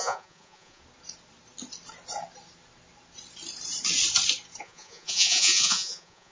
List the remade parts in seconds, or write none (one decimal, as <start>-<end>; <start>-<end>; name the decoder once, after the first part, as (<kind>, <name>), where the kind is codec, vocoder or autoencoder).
0.0-0.8 (vocoder, Vocos); 4.6-6.3